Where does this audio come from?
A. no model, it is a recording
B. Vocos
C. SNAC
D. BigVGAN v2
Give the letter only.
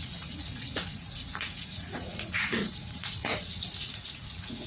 B